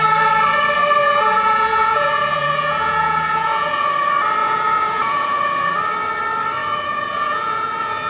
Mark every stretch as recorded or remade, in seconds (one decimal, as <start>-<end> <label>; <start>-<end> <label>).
0.0-1.0 recorded; 1.0-3.9 remade; 3.9-4.4 recorded; 4.4-5.7 remade; 5.7-6.6 recorded; 6.6-8.1 remade